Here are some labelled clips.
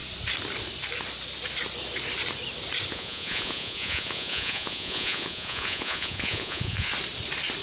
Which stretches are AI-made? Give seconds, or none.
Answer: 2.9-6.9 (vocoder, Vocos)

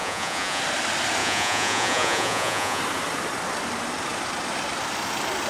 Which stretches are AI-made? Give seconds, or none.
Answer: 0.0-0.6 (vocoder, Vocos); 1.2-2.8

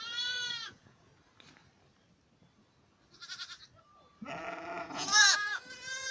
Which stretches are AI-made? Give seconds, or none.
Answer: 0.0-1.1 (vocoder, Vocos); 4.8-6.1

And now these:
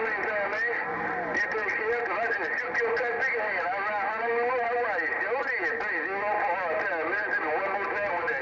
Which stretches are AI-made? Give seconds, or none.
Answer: none

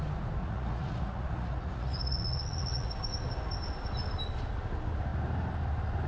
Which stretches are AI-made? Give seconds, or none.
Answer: 0.4-3.0 (vocoder, Vocos)